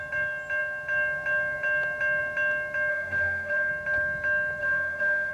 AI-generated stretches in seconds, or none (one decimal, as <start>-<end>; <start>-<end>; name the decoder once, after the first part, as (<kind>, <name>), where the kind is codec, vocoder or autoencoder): 2.9-3.7 (autoencoder, DAC-VAE); 4.6-5.3